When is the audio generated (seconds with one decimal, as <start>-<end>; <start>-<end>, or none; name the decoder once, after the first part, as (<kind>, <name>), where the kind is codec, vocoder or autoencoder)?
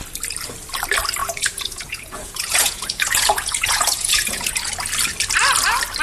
1.2-4.7 (vocoder, Vocos)